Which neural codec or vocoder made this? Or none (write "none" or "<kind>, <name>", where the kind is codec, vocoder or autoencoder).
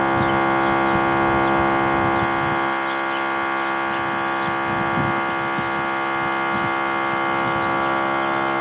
none